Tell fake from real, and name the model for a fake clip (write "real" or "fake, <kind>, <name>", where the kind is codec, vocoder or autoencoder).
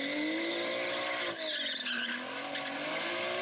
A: real